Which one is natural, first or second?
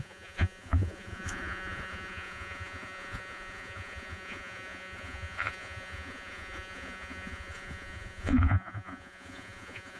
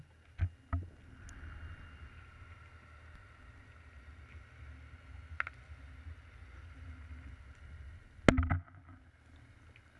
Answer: second